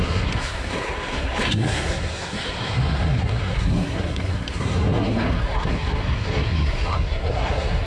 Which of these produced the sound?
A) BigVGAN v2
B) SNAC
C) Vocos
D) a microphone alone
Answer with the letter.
B